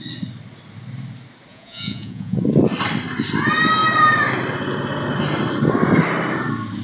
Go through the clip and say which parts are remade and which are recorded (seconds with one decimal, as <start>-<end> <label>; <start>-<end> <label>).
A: 0.0-1.5 recorded; 1.5-2.4 remade; 2.4-6.8 recorded

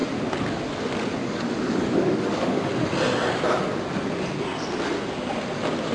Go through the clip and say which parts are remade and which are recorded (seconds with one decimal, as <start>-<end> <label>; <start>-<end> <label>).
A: 0.0-1.2 recorded; 1.2-2.7 remade; 2.7-5.9 recorded

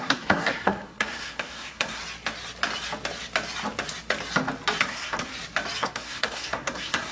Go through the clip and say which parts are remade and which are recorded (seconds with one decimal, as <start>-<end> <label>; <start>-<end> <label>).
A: 0.0-2.0 remade; 2.0-4.8 recorded; 4.8-5.3 remade; 5.3-5.8 recorded; 5.8-7.1 remade

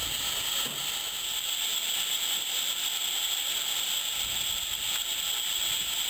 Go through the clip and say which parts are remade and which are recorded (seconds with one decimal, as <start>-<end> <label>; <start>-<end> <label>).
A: 0.0-6.1 recorded

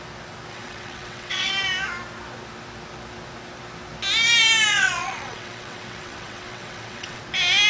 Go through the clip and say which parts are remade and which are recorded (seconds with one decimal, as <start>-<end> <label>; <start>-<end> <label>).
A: 0.0-0.5 recorded; 0.5-1.5 remade; 1.5-4.7 recorded; 4.7-7.2 remade; 7.2-7.7 recorded

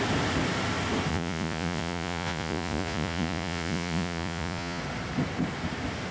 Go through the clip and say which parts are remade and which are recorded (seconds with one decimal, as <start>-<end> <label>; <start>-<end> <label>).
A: 0.0-1.1 recorded; 1.1-4.8 remade; 4.8-6.1 recorded